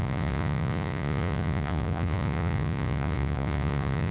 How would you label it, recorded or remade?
remade